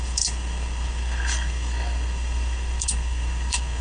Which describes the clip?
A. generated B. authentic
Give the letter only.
A